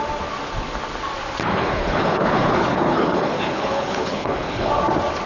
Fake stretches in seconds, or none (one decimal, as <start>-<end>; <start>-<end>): 1.5-4.7